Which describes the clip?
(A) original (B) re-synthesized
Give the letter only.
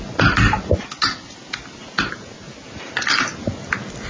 A